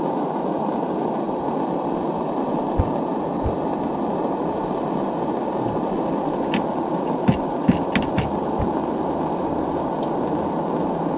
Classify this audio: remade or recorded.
recorded